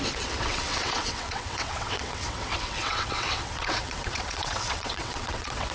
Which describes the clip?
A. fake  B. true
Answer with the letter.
A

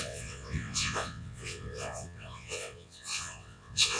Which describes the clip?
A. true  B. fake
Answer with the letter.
B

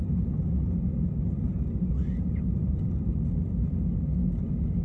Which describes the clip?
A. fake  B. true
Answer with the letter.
B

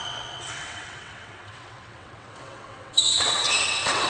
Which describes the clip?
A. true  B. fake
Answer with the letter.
B